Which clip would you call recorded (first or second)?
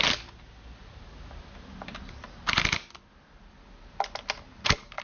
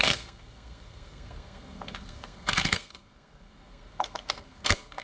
first